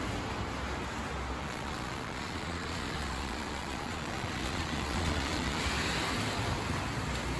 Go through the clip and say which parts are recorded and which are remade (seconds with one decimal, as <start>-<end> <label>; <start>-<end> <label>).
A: 0.0-1.4 recorded; 1.4-5.6 remade; 5.6-7.4 recorded